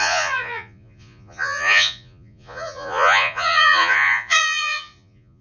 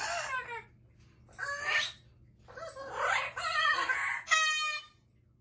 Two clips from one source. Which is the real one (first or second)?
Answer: second